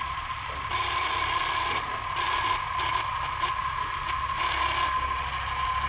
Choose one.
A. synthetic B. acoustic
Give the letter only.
B